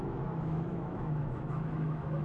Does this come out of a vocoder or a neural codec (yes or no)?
yes